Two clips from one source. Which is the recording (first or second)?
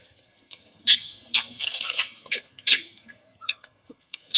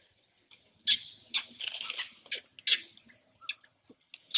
second